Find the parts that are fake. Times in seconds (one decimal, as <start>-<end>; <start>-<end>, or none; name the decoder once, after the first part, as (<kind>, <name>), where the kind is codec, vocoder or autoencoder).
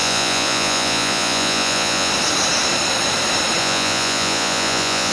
0.0-2.1 (vocoder, Vocos); 3.6-5.1